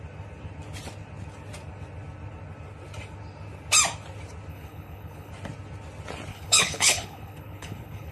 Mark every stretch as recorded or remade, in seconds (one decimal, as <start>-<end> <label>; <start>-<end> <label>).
0.0-4.5 recorded; 4.5-5.3 remade; 5.3-6.3 recorded; 6.3-8.1 remade